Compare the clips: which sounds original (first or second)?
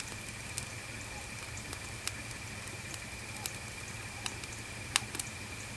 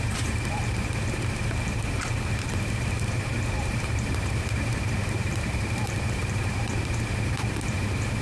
first